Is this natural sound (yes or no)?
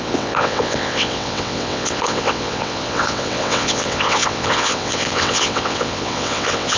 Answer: no